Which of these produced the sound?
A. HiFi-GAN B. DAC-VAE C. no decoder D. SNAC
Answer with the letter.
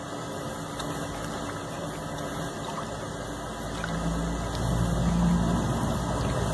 C